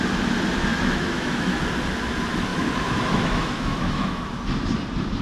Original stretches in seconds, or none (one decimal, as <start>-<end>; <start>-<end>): 0.0-0.7; 1.6-2.5; 4.2-5.2